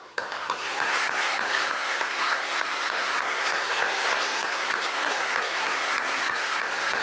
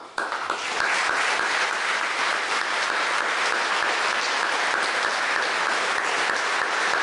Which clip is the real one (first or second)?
second